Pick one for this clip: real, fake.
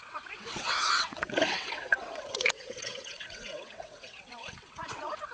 fake